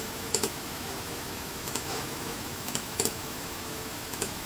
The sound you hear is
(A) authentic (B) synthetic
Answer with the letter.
B